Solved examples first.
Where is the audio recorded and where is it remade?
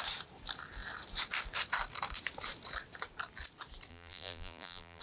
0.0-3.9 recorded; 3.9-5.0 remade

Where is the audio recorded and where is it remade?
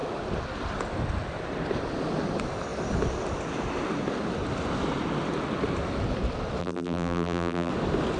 0.0-6.6 recorded; 6.6-7.7 remade; 7.7-8.2 recorded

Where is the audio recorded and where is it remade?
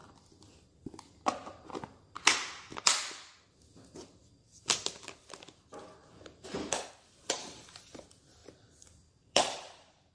0.0-4.2 recorded; 4.2-4.8 remade; 4.8-6.0 recorded; 6.0-6.9 remade; 6.9-8.4 recorded; 8.4-10.1 remade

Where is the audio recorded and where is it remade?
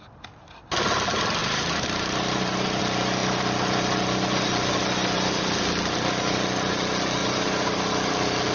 0.0-1.4 recorded; 1.4-2.8 remade; 2.8-7.2 recorded; 7.2-7.9 remade; 7.9-8.5 recorded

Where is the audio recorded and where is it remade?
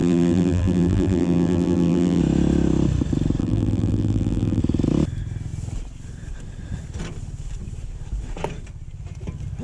0.0-2.2 remade; 2.2-3.4 recorded; 3.4-4.6 remade; 4.6-9.6 recorded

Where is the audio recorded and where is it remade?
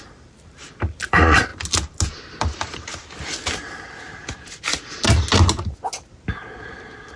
0.0-1.5 remade; 1.5-2.2 recorded; 2.2-2.9 remade; 2.9-6.6 recorded; 6.6-7.2 remade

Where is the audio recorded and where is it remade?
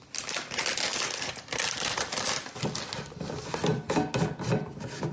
0.0-0.9 recorded; 0.9-3.2 remade; 3.2-5.1 recorded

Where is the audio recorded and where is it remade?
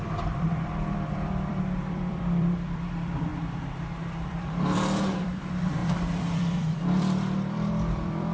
0.0-3.3 remade; 3.3-4.0 recorded; 4.0-8.3 remade